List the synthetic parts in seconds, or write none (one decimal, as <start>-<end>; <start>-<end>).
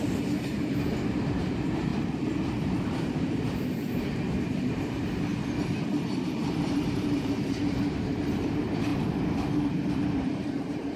0.0-1.9; 2.6-5.3; 6.2-8.9; 9.9-11.0